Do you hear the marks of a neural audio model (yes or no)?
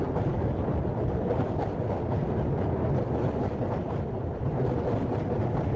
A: no